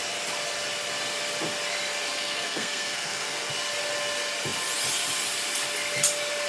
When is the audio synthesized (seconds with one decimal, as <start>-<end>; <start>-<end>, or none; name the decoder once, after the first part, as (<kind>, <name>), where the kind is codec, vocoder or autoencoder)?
2.1-3.5 (codec, SNAC)